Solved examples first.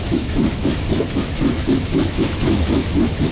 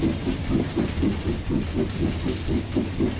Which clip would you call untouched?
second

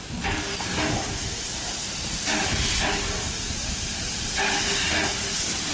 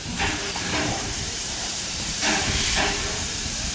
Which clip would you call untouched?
first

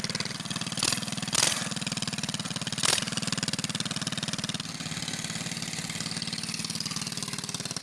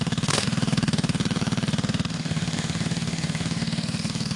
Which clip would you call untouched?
first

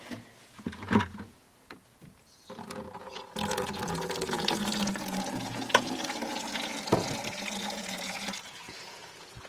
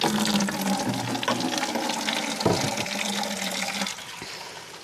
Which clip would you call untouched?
second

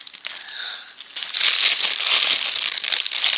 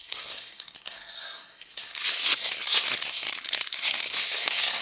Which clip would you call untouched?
first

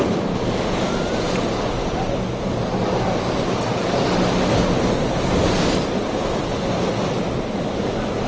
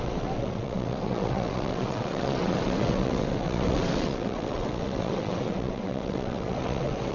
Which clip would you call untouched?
first